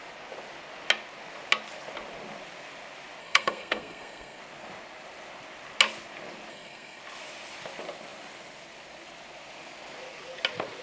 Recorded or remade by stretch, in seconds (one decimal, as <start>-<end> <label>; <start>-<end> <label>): 0.0-3.2 recorded; 3.2-4.4 remade; 4.4-6.5 recorded; 6.5-7.0 remade; 7.0-10.8 recorded